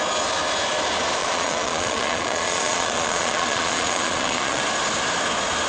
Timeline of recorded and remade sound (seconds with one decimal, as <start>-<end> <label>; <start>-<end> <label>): 0.0-1.2 recorded; 1.2-4.6 remade; 4.6-5.7 recorded